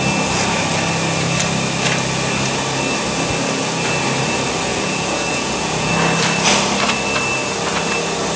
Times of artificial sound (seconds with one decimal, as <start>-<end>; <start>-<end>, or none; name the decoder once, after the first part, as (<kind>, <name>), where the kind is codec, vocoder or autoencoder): 4.7-5.9 (vocoder, Vocos)